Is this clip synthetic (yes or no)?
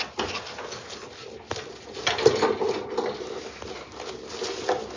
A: no